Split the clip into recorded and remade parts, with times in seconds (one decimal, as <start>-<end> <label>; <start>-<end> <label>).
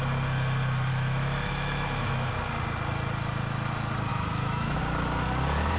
0.0-0.9 recorded; 0.9-2.3 remade; 2.3-4.1 recorded; 4.1-4.8 remade; 4.8-5.8 recorded